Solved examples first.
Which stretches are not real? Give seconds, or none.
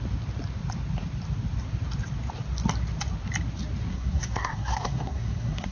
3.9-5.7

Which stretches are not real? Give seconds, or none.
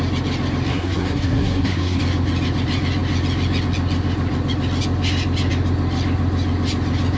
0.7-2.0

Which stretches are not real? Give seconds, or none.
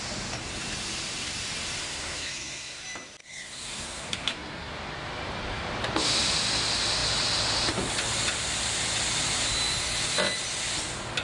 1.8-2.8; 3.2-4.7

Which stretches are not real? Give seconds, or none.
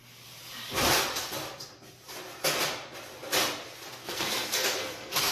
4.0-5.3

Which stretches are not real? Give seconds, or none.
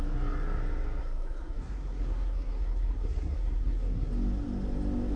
1.0-4.1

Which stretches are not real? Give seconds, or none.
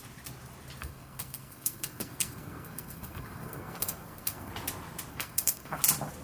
0.8-4.5; 5.1-5.8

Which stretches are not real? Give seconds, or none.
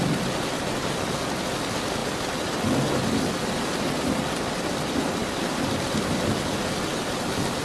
none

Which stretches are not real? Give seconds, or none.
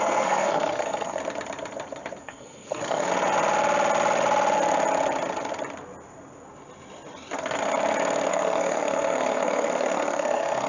0.0-1.2; 2.2-3.1; 8.3-10.7